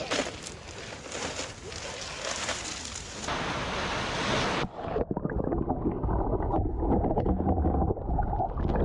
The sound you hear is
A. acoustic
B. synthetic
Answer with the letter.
A